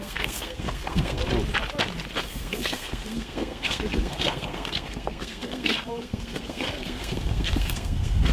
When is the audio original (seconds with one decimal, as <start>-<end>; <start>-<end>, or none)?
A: 1.2-2.2